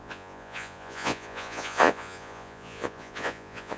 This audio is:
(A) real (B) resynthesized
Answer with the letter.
B